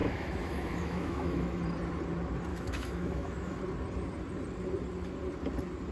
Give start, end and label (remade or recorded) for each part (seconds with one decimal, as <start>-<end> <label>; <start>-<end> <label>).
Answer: 0.0-1.6 remade; 1.6-2.5 recorded; 2.5-3.6 remade; 3.6-5.9 recorded

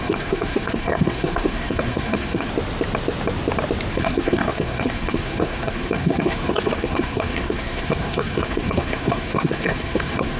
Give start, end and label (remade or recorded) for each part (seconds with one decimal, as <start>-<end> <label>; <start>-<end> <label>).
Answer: 0.0-2.5 remade; 2.5-3.9 recorded; 3.9-10.4 remade

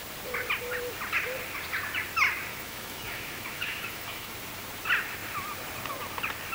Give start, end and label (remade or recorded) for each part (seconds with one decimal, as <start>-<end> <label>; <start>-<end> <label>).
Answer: 0.0-2.5 recorded; 2.5-4.3 remade; 4.3-6.5 recorded

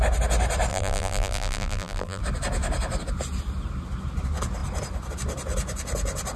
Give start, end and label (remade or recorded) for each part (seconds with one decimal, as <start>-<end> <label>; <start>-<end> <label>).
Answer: 0.0-0.7 recorded; 0.7-2.2 remade; 2.2-6.4 recorded

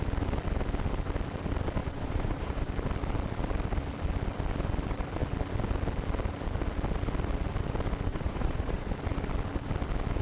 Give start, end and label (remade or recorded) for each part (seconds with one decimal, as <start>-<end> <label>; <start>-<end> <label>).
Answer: 0.0-1.8 recorded; 1.8-2.7 remade; 2.7-8.1 recorded; 8.1-8.9 remade; 8.9-10.2 recorded